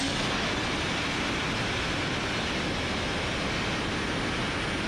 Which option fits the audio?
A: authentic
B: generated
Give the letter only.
A